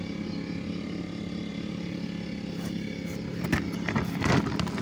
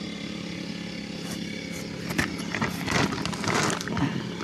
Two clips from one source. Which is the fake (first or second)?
second